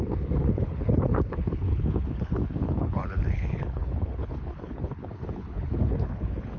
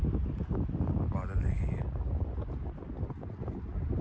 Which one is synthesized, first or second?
first